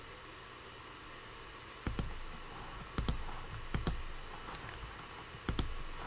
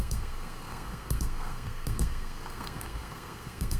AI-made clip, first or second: second